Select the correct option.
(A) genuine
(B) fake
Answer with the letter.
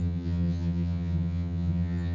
B